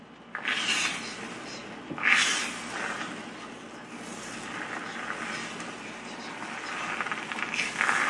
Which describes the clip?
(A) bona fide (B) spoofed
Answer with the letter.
A